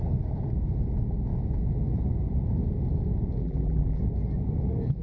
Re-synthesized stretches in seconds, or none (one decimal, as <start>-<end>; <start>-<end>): 3.4-4.0